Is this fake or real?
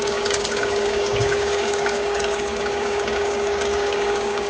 fake